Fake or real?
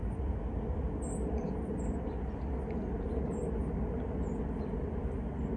real